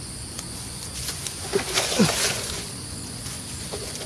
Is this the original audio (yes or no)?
no